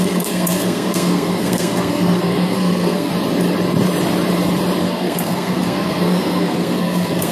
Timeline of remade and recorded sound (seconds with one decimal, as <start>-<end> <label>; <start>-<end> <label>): 0.0-3.1 remade; 3.1-4.8 recorded; 4.8-7.3 remade